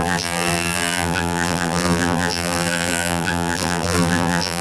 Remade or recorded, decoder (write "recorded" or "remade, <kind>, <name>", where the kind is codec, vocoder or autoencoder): remade, vocoder, BigVGAN v2